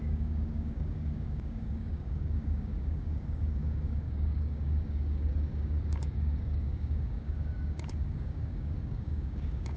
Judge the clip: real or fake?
fake